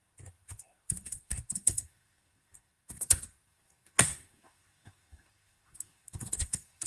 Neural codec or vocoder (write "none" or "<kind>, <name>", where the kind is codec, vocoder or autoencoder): codec, SNAC